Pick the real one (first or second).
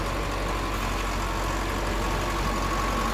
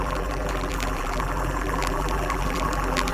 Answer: first